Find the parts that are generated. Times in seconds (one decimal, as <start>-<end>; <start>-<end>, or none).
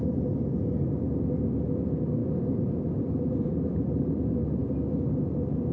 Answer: none